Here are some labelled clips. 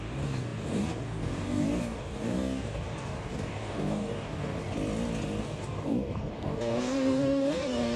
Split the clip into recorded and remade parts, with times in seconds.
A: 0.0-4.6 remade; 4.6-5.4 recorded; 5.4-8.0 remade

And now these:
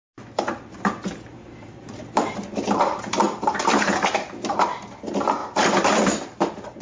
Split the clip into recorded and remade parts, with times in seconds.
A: 0.0-4.1 remade; 4.1-5.4 recorded; 5.4-6.8 remade

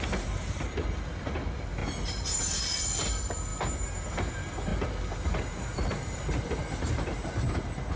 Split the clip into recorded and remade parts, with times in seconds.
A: 0.0-1.8 recorded; 1.8-2.6 remade; 2.6-3.5 recorded; 3.5-4.3 remade; 4.3-4.7 recorded; 4.7-6.2 remade; 6.2-8.0 recorded

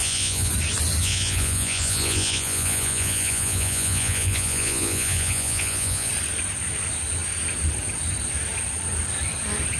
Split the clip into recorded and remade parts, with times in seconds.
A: 0.0-0.5 remade; 0.5-1.0 recorded; 1.0-6.1 remade; 6.1-9.8 recorded